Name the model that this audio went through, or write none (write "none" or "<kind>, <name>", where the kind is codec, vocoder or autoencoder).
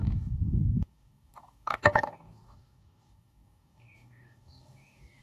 codec, DAC